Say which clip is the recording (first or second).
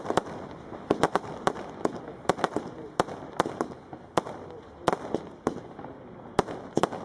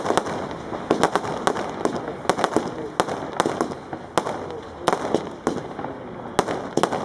second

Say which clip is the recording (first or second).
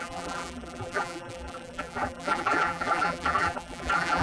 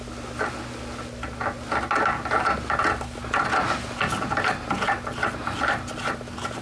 second